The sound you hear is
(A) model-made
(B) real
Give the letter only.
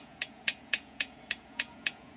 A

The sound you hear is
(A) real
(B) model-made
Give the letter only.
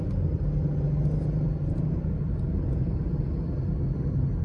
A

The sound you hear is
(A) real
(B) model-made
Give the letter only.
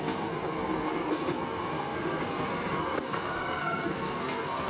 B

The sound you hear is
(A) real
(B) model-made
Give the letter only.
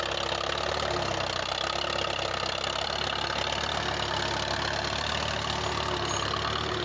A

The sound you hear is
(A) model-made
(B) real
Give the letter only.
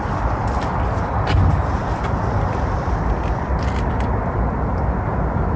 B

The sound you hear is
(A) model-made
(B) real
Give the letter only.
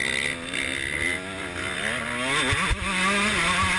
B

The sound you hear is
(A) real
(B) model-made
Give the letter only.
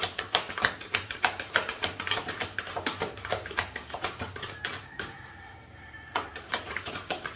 B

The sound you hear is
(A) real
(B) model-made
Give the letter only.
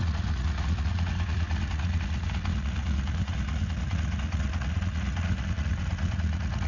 B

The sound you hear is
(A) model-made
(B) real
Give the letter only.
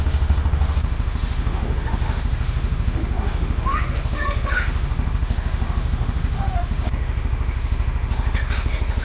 A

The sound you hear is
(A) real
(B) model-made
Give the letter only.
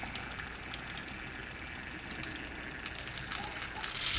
A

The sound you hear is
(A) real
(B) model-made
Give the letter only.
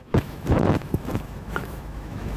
B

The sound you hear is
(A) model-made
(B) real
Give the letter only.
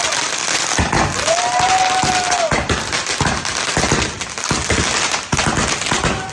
B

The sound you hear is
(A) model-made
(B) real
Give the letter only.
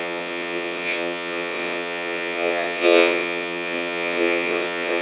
A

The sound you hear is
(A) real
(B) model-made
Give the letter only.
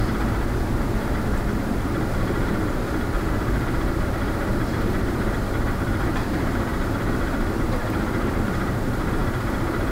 B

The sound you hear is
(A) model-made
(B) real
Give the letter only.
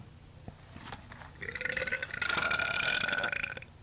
B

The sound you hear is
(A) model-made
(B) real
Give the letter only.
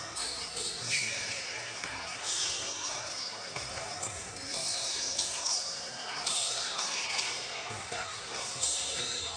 A